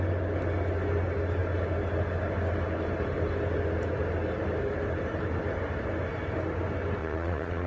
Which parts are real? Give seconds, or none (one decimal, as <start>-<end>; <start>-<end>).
0.0-7.0